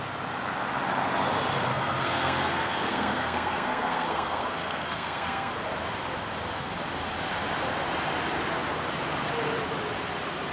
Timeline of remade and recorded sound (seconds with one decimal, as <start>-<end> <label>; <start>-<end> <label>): 0.0-1.7 recorded; 1.7-5.5 remade; 5.5-10.5 recorded